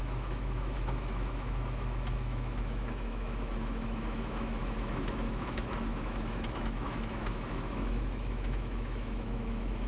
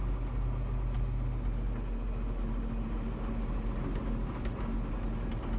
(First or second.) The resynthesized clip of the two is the first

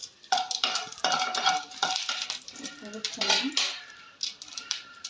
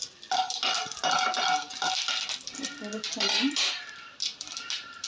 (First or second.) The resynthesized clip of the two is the first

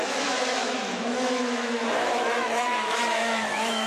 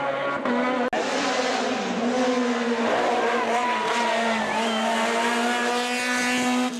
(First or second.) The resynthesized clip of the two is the first